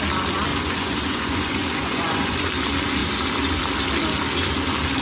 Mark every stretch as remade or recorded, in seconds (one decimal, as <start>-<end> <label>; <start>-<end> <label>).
0.0-0.5 recorded; 0.5-2.5 remade; 2.5-5.0 recorded